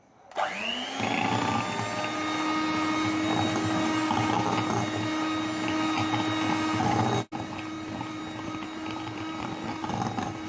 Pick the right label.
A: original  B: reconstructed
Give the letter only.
A